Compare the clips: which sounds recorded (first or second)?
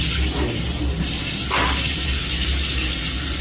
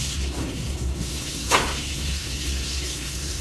first